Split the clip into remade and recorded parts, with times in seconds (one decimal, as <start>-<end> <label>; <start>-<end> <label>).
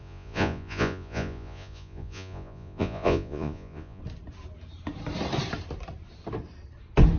0.0-4.0 remade; 4.0-7.2 recorded